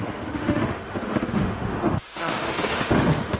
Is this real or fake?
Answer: fake